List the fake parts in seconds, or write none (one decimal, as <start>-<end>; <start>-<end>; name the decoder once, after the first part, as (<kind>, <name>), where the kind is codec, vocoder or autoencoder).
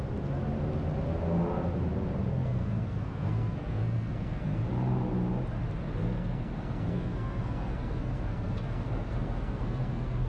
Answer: 2.3-4.6 (codec, SNAC); 6.0-10.3